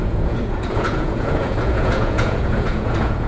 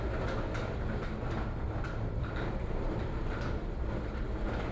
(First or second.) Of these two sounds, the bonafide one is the second